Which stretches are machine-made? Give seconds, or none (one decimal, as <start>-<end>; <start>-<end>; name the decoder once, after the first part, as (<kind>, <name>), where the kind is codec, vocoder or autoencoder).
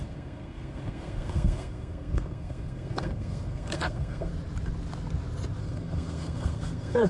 0.0-4.3 (codec, SNAC); 5.6-7.1